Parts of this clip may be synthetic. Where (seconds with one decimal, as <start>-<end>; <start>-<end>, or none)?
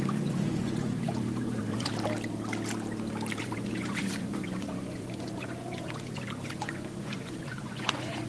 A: 0.0-1.9; 3.4-8.3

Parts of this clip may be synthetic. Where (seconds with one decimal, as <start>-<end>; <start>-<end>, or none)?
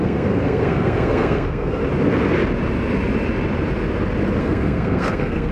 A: 0.0-1.8; 4.4-5.5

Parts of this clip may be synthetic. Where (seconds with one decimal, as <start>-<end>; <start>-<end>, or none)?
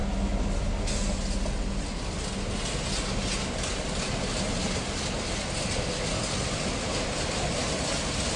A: none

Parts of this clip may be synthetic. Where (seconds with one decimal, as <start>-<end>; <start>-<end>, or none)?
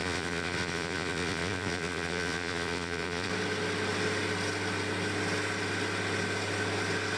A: 0.0-3.3